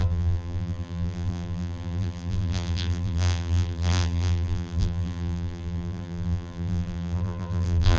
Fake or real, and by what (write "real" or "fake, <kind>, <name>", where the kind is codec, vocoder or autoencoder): fake, vocoder, BigVGAN v2